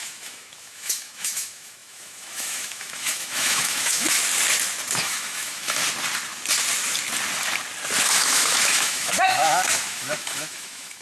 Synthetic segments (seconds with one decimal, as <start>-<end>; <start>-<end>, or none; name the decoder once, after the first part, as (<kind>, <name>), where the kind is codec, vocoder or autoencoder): 0.0-4.2 (autoencoder, DAC-VAE); 5.0-5.8; 8.0-11.0